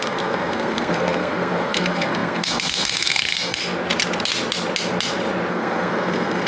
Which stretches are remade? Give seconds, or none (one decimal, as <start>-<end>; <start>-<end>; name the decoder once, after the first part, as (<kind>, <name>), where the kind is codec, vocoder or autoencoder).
0.0-3.6 (codec, SNAC); 5.5-6.5

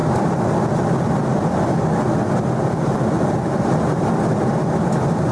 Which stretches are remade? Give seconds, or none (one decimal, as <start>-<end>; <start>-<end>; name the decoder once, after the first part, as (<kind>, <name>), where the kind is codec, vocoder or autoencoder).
none

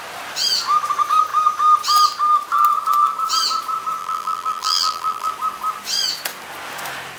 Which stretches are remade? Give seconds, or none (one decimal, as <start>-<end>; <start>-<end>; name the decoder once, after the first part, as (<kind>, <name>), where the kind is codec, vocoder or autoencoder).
4.0-5.3 (vocoder, BigVGAN v2)

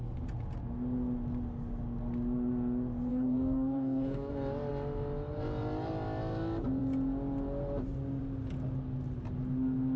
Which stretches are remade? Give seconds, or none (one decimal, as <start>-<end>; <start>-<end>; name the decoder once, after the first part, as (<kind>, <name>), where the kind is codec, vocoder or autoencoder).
3.1-4.3 (codec, DAC)

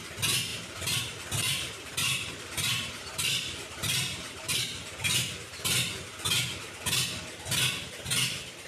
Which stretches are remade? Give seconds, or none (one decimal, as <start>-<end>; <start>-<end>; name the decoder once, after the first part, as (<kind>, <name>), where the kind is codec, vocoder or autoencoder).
0.5-4.6 (vocoder, BigVGAN v2)